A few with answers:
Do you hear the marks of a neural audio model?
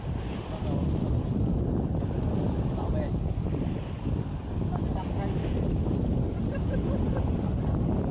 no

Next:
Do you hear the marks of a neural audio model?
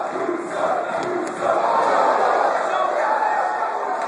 no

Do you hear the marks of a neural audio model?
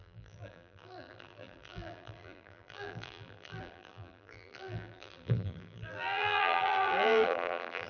yes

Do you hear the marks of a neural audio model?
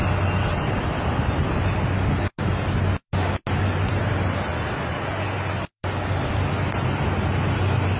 no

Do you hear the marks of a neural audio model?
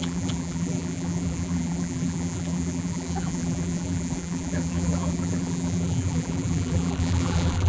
yes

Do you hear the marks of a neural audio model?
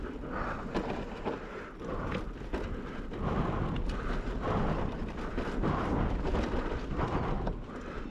no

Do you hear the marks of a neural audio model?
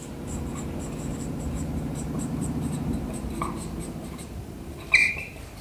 yes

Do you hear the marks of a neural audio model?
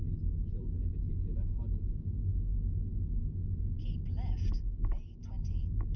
no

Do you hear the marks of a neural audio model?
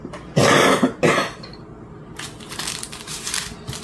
no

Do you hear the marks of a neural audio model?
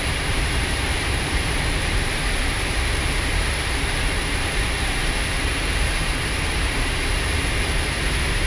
yes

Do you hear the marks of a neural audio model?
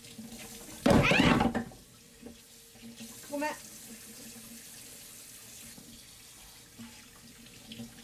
no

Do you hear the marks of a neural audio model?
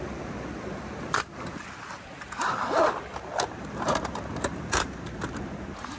no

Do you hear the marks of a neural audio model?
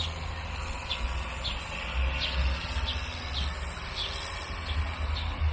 no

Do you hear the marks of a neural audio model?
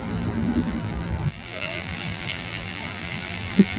yes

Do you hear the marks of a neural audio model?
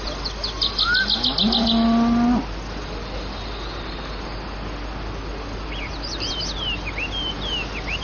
no